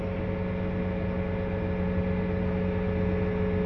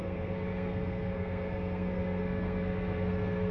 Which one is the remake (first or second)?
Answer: second